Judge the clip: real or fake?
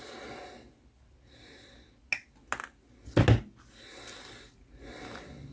real